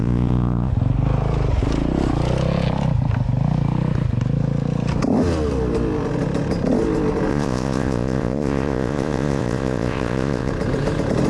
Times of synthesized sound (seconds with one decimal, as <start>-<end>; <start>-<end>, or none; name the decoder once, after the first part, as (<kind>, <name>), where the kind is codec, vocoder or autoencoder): 0.0-0.7 (vocoder, Vocos); 7.3-10.5